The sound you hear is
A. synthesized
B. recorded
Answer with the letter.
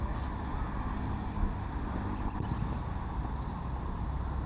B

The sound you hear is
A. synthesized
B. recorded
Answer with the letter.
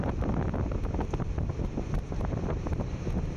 B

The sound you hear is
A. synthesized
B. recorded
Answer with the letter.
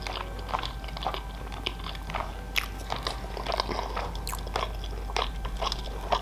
B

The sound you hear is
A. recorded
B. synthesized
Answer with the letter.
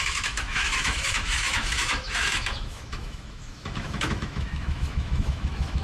B